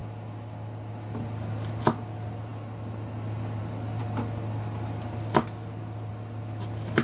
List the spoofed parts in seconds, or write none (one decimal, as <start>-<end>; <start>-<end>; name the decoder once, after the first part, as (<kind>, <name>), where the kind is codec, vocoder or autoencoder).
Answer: none